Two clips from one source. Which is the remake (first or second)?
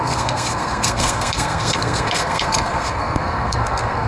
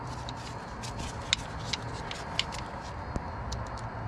first